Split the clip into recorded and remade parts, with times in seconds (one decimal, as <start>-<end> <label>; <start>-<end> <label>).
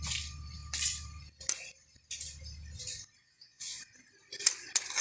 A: 0.0-3.2 recorded; 3.2-3.8 remade; 3.8-5.0 recorded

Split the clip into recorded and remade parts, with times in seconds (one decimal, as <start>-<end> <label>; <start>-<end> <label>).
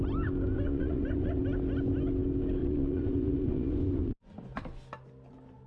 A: 0.0-0.5 recorded; 0.5-1.4 remade; 1.4-2.6 recorded; 2.6-4.3 remade; 4.3-5.7 recorded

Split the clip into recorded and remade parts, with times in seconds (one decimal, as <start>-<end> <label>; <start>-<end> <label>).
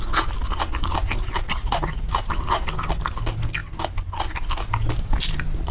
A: 0.0-1.5 recorded; 1.5-2.1 remade; 2.1-5.7 recorded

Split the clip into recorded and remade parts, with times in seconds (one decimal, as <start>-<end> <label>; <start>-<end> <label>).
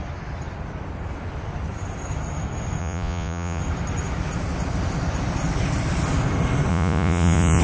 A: 0.0-2.8 recorded; 2.8-3.6 remade; 3.6-6.7 recorded; 6.7-7.6 remade